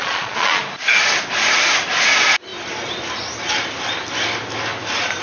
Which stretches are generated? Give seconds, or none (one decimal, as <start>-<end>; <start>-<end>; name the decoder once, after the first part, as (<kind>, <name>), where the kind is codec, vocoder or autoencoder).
0.0-0.6 (vocoder, Vocos)